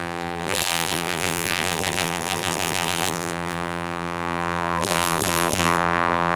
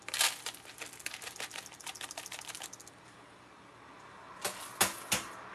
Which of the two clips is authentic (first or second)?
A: second